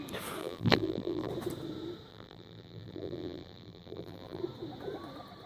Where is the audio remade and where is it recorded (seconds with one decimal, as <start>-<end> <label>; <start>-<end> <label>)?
0.0-0.4 recorded; 0.4-1.3 remade; 1.3-2.1 recorded; 2.1-4.4 remade; 4.4-5.5 recorded